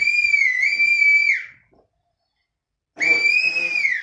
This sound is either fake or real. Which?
real